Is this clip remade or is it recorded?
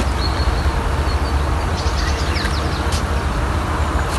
recorded